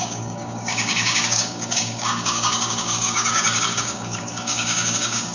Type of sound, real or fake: fake